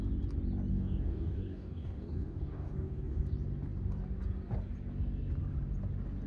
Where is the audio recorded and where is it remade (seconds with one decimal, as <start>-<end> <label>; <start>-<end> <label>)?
0.0-0.7 recorded; 0.7-3.2 remade; 3.2-6.3 recorded